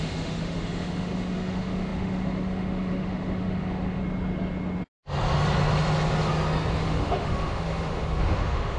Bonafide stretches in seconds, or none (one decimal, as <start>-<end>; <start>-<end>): 4.0-6.8

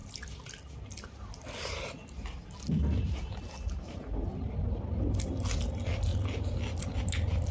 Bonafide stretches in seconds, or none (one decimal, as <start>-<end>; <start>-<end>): 0.0-7.5

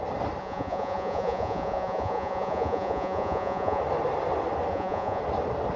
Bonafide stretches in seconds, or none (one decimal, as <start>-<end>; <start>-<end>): 0.0-0.4; 3.8-4.7; 5.2-5.8

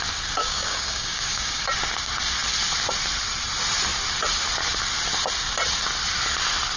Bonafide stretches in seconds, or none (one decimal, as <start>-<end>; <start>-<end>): 0.0-0.4; 1.6-6.8

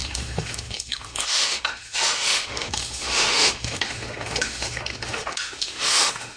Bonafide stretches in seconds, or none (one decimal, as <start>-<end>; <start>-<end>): none

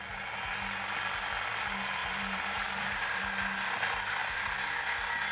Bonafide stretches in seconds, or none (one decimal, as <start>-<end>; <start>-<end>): 0.0-2.0; 3.2-4.2; 4.8-5.3

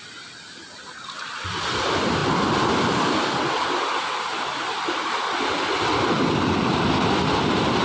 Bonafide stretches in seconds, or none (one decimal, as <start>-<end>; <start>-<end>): 0.0-7.8